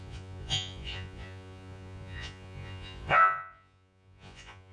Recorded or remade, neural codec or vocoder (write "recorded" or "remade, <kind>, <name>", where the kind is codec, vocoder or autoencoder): remade, vocoder, Vocos